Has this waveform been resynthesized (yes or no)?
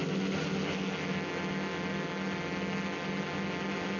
no